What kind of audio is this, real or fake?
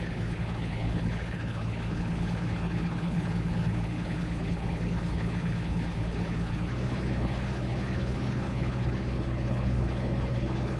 fake